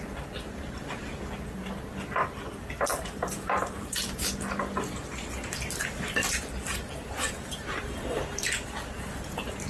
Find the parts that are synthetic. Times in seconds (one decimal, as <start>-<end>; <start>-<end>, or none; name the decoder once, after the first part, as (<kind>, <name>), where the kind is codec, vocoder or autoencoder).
2.9-4.3 (vocoder, BigVGAN v2); 6.7-8.2